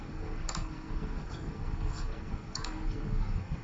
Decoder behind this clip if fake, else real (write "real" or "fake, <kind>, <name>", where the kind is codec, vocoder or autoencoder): fake, codec, SNAC